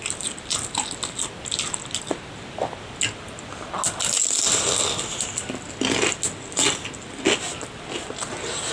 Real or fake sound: real